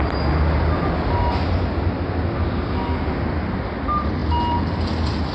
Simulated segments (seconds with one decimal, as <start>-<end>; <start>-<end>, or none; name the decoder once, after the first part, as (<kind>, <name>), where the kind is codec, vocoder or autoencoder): none